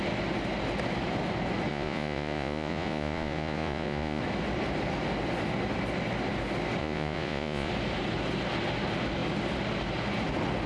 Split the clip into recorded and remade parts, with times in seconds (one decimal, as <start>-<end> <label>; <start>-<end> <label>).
0.0-1.7 recorded; 1.7-4.2 remade; 4.2-6.8 recorded; 6.8-7.7 remade; 7.7-10.7 recorded